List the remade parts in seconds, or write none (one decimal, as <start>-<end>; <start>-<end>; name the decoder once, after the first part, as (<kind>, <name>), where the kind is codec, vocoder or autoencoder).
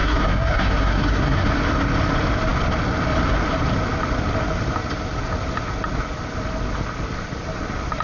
0.0-1.5 (codec, SNAC)